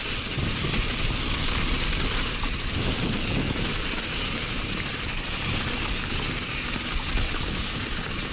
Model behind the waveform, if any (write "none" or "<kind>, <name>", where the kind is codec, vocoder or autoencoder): none